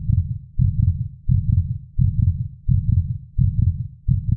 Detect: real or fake real